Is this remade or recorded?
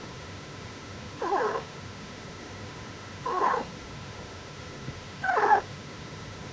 remade